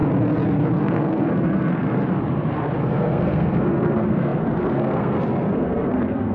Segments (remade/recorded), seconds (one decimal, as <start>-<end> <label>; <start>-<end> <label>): 0.0-0.8 recorded; 0.8-2.0 remade; 2.0-2.8 recorded; 2.8-6.3 remade